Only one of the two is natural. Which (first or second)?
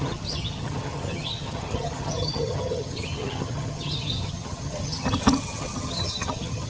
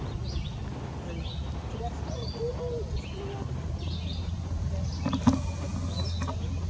second